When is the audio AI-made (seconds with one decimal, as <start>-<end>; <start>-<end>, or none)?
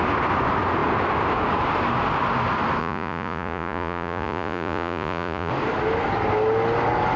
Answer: 2.8-5.5